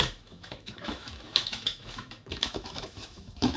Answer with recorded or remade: remade